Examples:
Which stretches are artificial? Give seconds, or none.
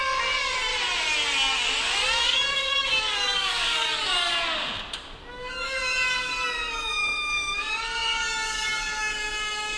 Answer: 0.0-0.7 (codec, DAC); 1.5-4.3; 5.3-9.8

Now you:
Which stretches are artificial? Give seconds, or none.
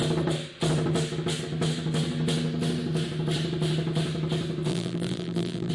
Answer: 4.7-5.7 (vocoder, BigVGAN v2)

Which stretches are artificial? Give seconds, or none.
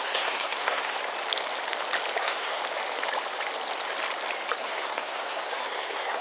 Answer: 0.0-1.0 (codec, SNAC); 2.2-2.6; 4.6-6.2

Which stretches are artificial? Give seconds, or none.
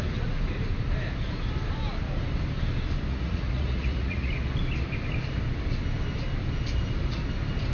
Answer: 3.1-4.3 (vocoder, Vocos)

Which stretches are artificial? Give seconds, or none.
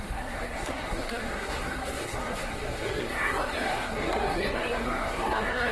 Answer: 0.0-5.7 (codec, SNAC)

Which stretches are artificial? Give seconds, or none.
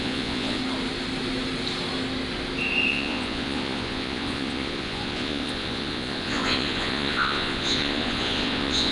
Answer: 0.0-0.6 (vocoder, Vocos); 2.9-8.9